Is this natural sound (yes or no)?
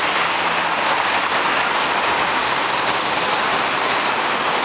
yes